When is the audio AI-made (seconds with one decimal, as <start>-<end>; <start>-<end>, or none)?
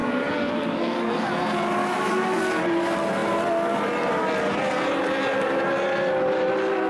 0.0-1.3; 1.8-2.4